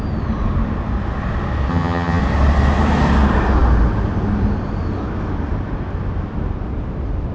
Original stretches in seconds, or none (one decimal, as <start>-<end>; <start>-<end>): 0.0-1.7; 2.2-7.3